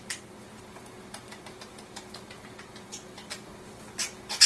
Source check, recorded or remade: recorded